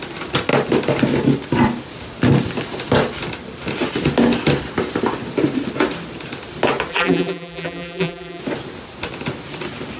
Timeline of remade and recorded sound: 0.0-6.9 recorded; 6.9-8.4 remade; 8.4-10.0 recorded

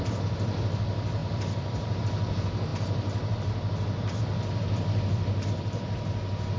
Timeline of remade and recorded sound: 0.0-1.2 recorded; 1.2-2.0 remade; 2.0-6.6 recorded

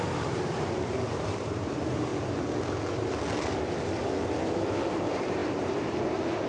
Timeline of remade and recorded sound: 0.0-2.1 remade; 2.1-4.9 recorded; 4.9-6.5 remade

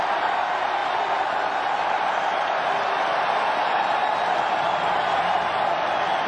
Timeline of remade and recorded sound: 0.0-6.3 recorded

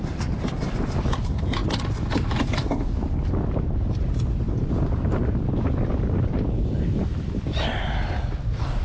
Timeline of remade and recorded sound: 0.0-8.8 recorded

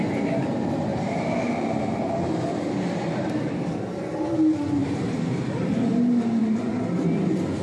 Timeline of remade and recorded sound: 0.0-0.9 recorded; 0.9-4.0 remade; 4.0-4.8 recorded; 4.8-5.3 remade; 5.3-7.6 recorded